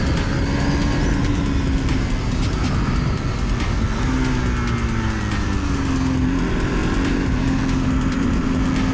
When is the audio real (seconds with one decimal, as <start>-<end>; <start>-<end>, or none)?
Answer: 0.0-8.9